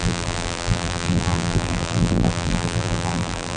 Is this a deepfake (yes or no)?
yes